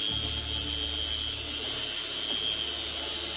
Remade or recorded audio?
recorded